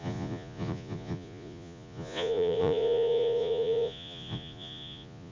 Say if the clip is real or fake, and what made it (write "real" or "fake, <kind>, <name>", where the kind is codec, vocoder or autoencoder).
fake, vocoder, Vocos